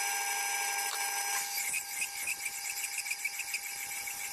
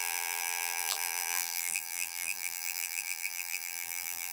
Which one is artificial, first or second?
second